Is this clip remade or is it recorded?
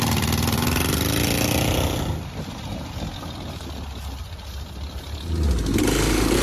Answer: recorded